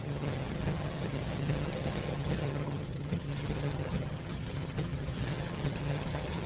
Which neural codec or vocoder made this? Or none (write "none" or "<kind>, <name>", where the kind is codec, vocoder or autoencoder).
vocoder, HiFi-GAN